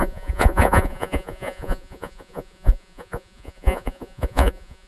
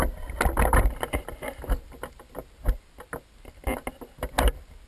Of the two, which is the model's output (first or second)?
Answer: first